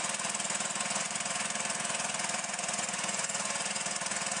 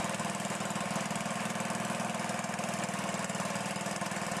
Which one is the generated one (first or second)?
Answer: first